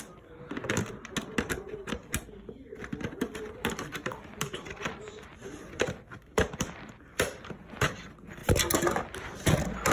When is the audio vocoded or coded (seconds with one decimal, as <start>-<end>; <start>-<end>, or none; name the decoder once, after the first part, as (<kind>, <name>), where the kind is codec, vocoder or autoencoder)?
2.9-7.4 (vocoder, BigVGAN v2)